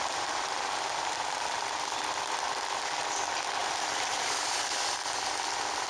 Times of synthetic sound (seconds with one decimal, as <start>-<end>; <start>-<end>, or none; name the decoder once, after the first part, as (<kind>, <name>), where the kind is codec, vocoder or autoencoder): 3.6-4.7 (vocoder, BigVGAN v2)